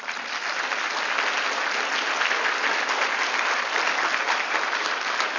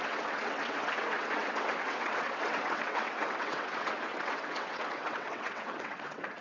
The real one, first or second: first